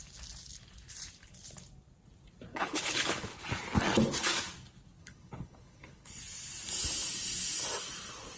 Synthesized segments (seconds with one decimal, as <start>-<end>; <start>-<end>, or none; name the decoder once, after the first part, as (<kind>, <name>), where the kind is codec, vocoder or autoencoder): 2.5-3.4 (codec, HILCodec); 5.0-6.2